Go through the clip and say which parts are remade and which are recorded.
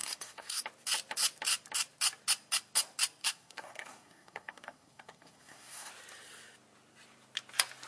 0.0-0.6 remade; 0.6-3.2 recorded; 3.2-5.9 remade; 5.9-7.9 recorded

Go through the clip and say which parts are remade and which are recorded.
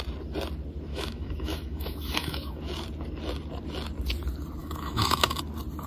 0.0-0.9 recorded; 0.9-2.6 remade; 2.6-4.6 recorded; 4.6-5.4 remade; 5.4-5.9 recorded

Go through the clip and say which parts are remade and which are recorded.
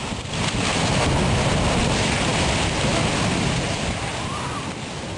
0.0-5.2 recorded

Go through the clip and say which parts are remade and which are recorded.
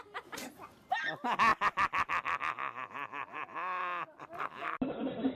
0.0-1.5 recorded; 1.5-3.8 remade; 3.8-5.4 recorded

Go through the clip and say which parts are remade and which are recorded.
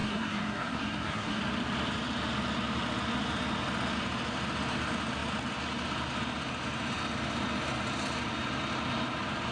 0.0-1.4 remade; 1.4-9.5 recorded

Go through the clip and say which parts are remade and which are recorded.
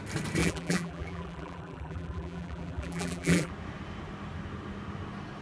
0.0-0.4 recorded; 0.4-3.5 remade; 3.5-5.4 recorded